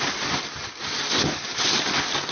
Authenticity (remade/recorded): recorded